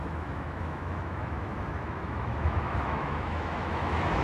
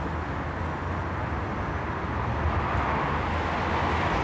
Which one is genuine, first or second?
second